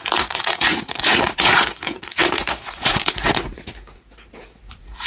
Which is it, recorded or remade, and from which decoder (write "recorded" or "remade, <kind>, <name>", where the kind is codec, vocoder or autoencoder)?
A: remade, vocoder, Vocos